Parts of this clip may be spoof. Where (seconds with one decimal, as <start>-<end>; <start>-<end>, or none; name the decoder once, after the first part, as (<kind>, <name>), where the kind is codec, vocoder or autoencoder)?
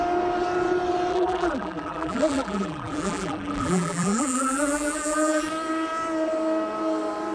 1.1-5.5 (vocoder, BigVGAN v2)